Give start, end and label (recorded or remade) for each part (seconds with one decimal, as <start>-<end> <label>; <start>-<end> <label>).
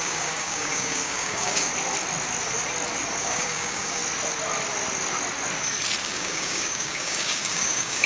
0.0-1.7 remade; 1.7-3.2 recorded; 3.2-4.0 remade; 4.0-6.0 recorded; 6.0-8.1 remade